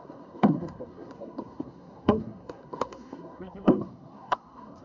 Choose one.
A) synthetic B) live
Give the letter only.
A